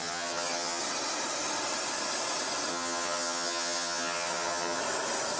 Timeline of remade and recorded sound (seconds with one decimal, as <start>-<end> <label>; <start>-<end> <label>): 0.0-0.8 remade; 0.8-2.7 recorded; 2.7-4.8 remade; 4.8-5.4 recorded